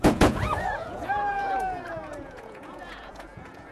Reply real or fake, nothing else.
fake